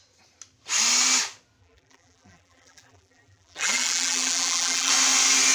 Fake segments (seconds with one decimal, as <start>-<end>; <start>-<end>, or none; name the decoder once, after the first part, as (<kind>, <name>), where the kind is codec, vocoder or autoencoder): 1.6-4.9 (vocoder, BigVGAN v2)

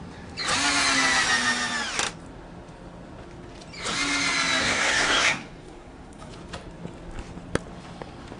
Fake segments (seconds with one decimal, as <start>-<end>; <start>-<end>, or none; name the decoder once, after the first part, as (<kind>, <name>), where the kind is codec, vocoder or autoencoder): 4.6-6.3 (codec, SNAC)

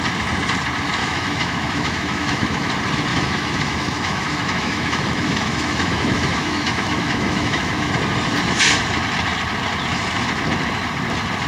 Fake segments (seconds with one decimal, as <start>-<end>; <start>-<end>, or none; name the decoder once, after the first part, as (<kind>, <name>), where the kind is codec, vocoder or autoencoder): 1.0-2.7 (autoencoder, DAC-VAE); 3.1-7.9

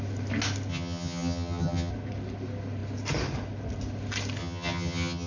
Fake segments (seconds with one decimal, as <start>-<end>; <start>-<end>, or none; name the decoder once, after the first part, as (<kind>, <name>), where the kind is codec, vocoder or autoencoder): 0.7-1.9 (vocoder, HiFi-GAN); 4.4-5.3

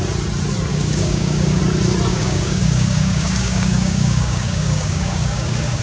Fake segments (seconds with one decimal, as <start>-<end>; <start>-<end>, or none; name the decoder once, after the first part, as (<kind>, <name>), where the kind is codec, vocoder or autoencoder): 0.7-1.6 (codec, DAC); 2.1-5.8